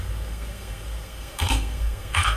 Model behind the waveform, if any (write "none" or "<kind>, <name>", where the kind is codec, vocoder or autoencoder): codec, SNAC